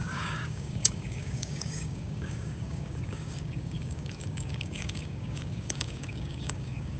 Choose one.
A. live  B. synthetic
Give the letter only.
B